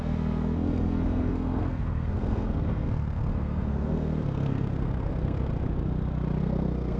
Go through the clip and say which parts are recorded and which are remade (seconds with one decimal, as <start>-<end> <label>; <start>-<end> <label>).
0.0-5.5 remade; 5.5-6.4 recorded; 6.4-7.0 remade